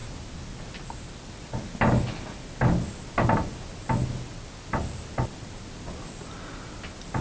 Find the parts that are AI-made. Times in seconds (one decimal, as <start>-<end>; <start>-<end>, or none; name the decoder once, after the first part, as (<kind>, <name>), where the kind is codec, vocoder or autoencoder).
none